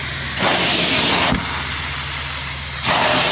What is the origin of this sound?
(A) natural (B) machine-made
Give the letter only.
A